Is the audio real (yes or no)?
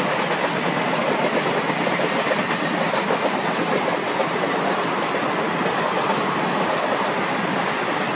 yes